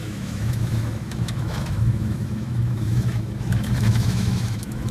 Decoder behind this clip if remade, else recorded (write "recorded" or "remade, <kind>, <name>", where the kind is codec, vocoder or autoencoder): remade, autoencoder, DAC-VAE